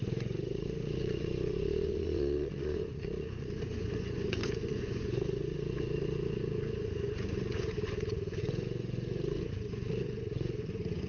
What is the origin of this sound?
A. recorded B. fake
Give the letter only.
B